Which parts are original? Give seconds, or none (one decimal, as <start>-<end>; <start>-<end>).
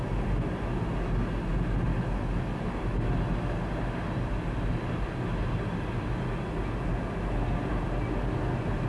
0.0-8.9